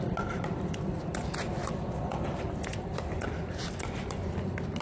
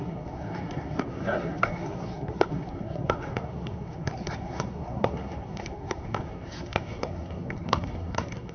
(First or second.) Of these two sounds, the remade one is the second